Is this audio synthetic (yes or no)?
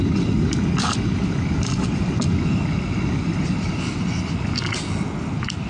no